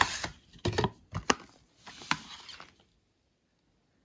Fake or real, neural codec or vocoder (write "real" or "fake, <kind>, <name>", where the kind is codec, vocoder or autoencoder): real